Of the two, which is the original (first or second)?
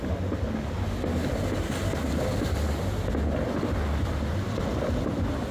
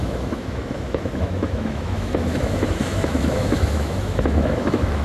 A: first